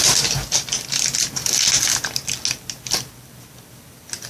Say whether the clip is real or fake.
real